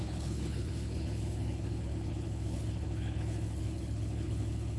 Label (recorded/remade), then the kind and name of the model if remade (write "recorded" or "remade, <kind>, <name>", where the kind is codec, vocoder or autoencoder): remade, codec, HILCodec